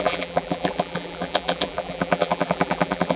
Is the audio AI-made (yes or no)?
yes